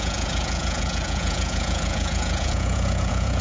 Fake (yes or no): yes